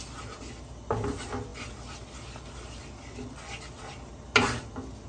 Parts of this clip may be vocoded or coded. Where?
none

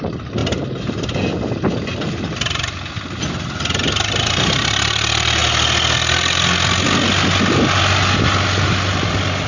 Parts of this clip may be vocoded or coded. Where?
none

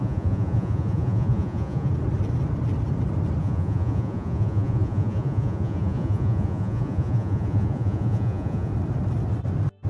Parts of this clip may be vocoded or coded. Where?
0.0-1.9 (vocoder, Vocos); 3.4-8.7

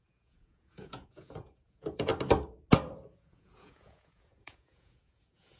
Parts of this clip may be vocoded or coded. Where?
0.0-2.1 (vocoder, Vocos); 3.1-5.6

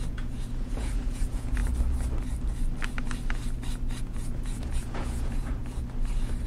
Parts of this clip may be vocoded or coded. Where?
0.0-1.6 (vocoder, Vocos); 4.0-5.6